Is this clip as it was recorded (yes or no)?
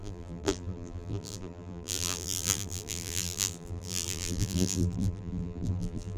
no